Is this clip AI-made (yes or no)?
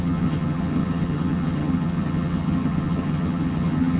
yes